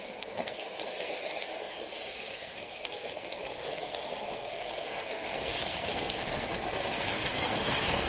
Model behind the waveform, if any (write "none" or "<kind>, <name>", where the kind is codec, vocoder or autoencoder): codec, SNAC